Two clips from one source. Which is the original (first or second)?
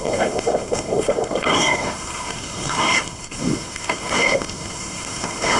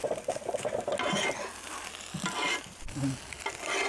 second